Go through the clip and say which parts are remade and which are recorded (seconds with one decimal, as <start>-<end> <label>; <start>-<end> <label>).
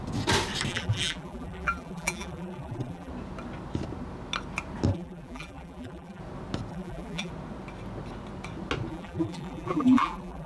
0.0-0.7 recorded; 0.7-3.1 remade; 3.1-4.9 recorded; 4.9-6.2 remade; 6.2-6.7 recorded; 6.7-7.3 remade; 7.3-8.9 recorded; 8.9-10.5 remade